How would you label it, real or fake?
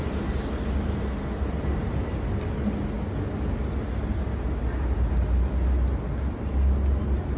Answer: real